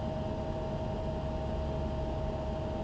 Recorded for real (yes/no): yes